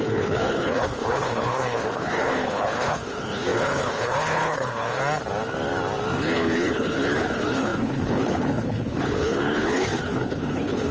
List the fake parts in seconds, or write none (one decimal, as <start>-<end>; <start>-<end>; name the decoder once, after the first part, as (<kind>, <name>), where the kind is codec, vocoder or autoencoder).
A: 0.0-5.0 (codec, HILCodec); 6.2-10.9